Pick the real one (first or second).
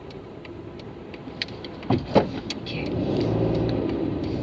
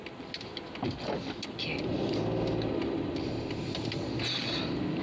second